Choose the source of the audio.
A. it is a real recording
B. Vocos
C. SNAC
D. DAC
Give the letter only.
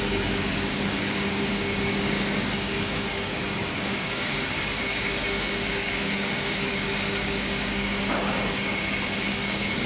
D